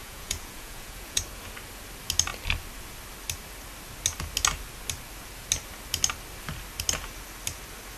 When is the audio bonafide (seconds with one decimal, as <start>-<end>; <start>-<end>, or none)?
1.2-8.0